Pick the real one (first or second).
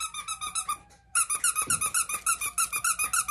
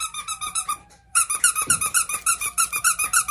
first